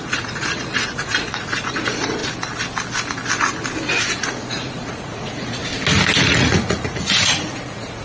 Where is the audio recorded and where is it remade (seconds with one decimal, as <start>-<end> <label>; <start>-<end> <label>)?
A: 0.0-2.2 remade; 2.2-4.0 recorded; 4.0-5.6 remade; 5.6-6.2 recorded; 6.2-8.0 remade